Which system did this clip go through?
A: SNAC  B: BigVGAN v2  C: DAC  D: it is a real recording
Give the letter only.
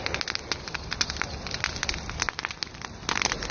D